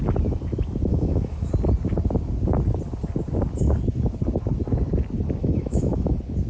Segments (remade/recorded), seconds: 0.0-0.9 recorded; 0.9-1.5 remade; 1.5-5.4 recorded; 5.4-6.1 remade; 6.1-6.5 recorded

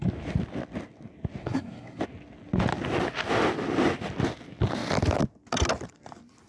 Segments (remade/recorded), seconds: 0.0-1.4 recorded; 1.4-2.0 remade; 2.0-6.5 recorded

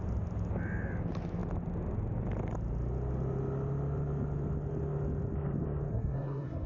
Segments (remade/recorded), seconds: 0.0-5.9 recorded; 5.9-6.7 remade

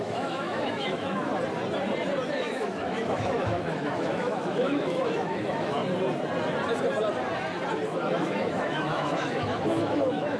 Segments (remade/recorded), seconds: 0.0-1.3 remade; 1.3-2.3 recorded; 2.3-5.8 remade; 5.8-7.9 recorded; 7.9-10.4 remade

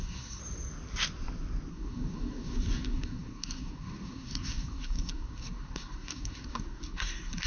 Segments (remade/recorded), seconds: 0.0-0.4 remade; 0.4-1.7 recorded; 1.7-7.5 remade

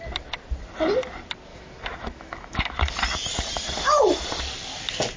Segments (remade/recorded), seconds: 0.0-1.5 recorded; 1.5-2.9 remade; 2.9-5.2 recorded

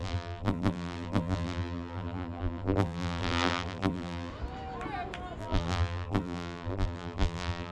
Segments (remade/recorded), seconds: 0.0-4.3 remade; 4.3-5.4 recorded; 5.4-7.7 remade